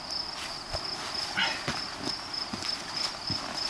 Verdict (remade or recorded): recorded